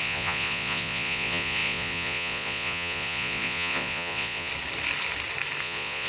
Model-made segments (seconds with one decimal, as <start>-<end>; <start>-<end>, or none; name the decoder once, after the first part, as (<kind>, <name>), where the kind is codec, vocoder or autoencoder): 0.0-4.5 (vocoder, Vocos); 5.6-6.1